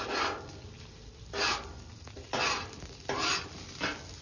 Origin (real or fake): real